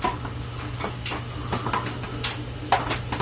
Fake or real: real